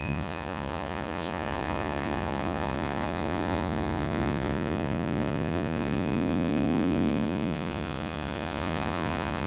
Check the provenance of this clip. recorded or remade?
remade